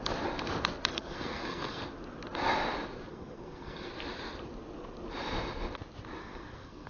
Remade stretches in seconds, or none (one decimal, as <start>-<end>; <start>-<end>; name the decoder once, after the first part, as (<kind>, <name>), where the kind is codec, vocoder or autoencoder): 0.9-1.8 (codec, SNAC); 3.1-3.9; 6.2-6.9